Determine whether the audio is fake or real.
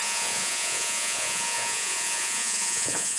fake